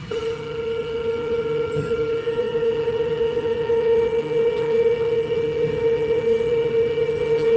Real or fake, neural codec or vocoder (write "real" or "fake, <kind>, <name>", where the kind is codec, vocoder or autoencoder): fake, vocoder, HiFi-GAN